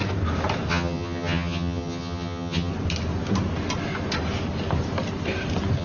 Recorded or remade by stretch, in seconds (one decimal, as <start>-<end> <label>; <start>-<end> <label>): 0.0-0.7 recorded; 0.7-2.7 remade; 2.7-5.8 recorded